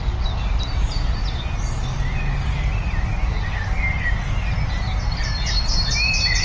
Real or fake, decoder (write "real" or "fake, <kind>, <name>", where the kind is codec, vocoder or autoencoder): real